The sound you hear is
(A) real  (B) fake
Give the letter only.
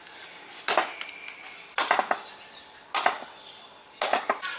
A